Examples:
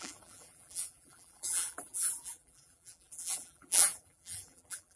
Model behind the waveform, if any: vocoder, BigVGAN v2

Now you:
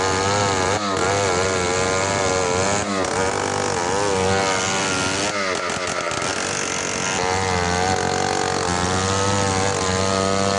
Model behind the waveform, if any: none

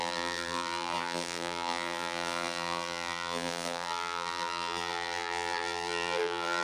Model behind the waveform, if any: vocoder, BigVGAN v2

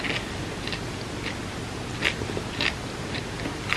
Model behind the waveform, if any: none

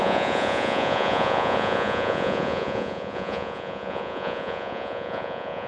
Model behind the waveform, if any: vocoder, Vocos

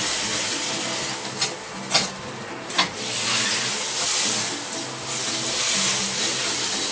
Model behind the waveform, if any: none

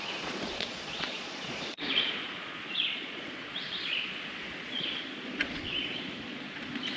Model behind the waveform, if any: vocoder, Vocos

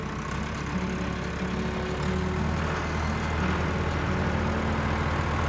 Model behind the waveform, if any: none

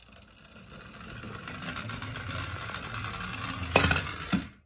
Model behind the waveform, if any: vocoder, BigVGAN v2